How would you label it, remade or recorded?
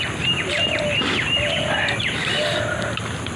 recorded